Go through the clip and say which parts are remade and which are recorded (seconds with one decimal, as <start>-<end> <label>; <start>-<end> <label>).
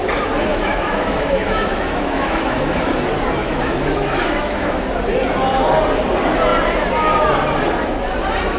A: 0.0-0.5 recorded; 0.5-2.9 remade; 2.9-3.4 recorded; 3.4-4.8 remade; 4.8-8.6 recorded